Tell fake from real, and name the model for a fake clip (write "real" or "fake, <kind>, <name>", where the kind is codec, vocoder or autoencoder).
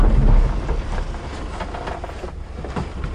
real